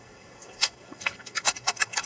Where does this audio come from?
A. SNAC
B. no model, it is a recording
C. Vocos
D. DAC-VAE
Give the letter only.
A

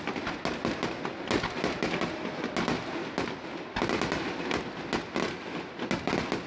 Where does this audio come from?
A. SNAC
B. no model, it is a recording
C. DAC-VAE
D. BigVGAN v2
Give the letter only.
B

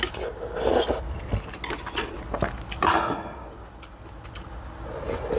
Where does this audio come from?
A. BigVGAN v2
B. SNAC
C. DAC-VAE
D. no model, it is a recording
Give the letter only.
D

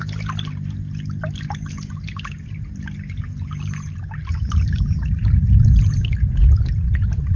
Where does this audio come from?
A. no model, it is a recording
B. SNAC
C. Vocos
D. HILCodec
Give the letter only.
A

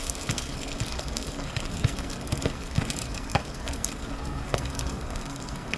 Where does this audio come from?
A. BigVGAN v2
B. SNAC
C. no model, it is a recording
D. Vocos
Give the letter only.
B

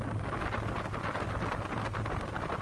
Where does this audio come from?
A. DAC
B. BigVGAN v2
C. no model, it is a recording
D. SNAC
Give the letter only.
C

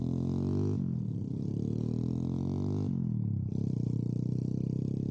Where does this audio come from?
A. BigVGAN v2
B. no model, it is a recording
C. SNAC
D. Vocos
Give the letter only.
B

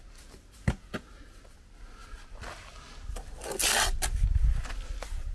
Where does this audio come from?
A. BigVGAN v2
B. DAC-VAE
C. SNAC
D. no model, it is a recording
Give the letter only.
D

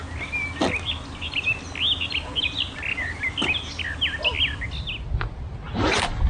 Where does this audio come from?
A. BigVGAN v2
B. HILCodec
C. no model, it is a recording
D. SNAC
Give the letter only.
C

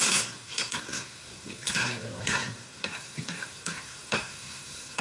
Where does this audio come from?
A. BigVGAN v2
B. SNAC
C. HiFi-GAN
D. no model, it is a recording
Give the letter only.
B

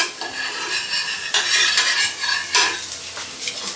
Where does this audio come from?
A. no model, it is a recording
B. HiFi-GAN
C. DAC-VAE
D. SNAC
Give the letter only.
A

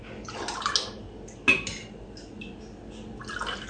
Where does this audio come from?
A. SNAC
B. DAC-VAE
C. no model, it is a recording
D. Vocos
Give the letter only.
C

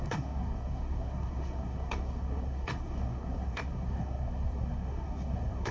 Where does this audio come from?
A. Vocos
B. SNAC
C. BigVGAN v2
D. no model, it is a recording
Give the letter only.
B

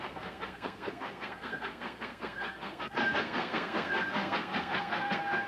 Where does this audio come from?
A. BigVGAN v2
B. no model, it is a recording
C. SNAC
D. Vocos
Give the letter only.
C